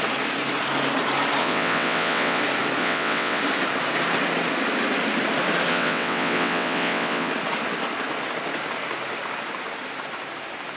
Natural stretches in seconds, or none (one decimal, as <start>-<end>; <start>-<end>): 0.0-1.4; 2.4-2.8; 3.4-5.7; 7.3-10.8

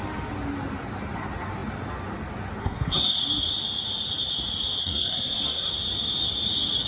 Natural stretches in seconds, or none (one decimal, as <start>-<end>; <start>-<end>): 0.0-2.6; 3.2-4.8; 5.7-6.9

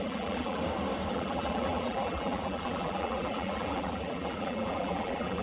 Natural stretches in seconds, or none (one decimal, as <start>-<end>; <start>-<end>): 0.6-1.1